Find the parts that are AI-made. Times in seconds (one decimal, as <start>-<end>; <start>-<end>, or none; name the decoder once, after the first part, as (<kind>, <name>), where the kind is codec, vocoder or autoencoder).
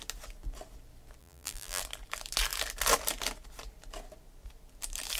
1.2-1.8 (vocoder, BigVGAN v2)